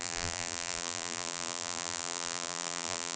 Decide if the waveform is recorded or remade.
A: remade